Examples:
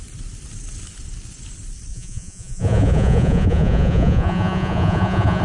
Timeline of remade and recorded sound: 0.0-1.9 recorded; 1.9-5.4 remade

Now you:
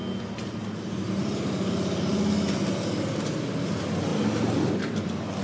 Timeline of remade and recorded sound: 0.0-5.4 recorded

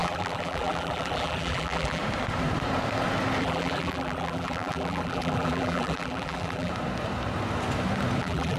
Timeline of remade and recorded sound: 0.0-2.0 remade; 2.0-3.4 recorded; 3.4-6.7 remade; 6.7-8.2 recorded; 8.2-8.6 remade

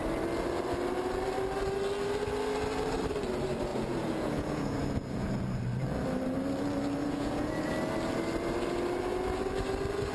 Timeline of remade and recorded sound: 0.0-3.7 recorded; 3.7-5.4 remade; 5.4-7.0 recorded; 7.0-7.7 remade; 7.7-10.1 recorded

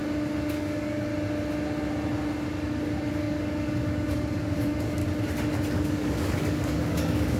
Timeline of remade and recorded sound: 0.0-0.5 recorded; 0.5-1.1 remade; 1.1-3.1 recorded; 3.1-5.0 remade; 5.0-5.7 recorded; 5.7-7.4 remade